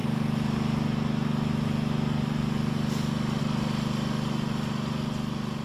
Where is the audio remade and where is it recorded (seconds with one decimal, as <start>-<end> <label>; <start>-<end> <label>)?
0.0-5.6 recorded